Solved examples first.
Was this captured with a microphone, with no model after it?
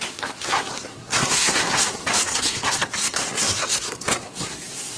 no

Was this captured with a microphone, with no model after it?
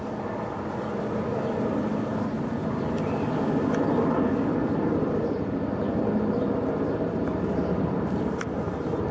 yes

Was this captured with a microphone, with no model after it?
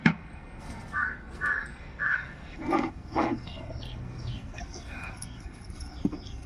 no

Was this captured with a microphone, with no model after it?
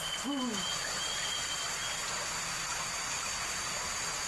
yes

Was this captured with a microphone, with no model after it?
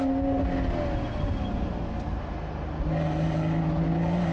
yes